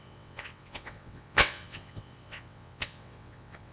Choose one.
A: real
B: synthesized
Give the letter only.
B